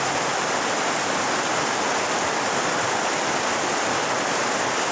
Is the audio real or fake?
real